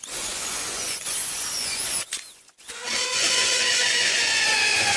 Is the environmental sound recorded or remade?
remade